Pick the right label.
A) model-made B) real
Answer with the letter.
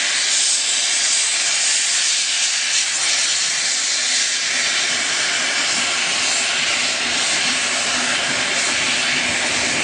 B